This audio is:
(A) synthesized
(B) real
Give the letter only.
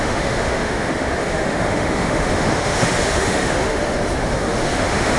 A